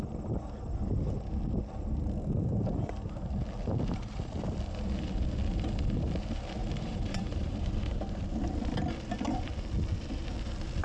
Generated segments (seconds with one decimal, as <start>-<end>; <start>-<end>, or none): 6.6-8.4